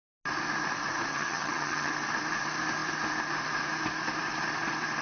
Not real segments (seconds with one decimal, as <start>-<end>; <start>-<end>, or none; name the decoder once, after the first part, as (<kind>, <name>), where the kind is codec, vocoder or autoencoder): 1.1-1.9 (vocoder, HiFi-GAN)